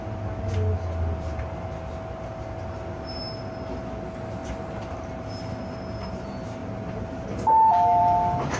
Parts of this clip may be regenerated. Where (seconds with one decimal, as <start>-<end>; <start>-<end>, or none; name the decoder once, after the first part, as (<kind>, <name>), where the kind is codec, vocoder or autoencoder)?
none